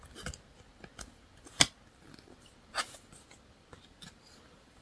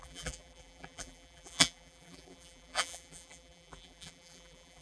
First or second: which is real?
first